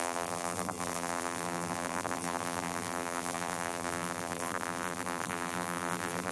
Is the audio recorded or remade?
remade